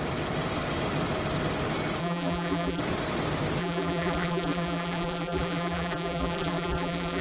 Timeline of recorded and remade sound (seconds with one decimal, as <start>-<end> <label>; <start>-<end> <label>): 0.0-2.0 recorded; 2.0-2.8 remade; 2.8-3.6 recorded; 3.6-7.2 remade